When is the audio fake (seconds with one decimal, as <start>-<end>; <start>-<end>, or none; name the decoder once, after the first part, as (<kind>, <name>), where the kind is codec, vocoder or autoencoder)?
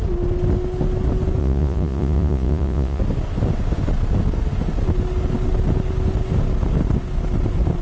1.4-3.0 (vocoder, Vocos)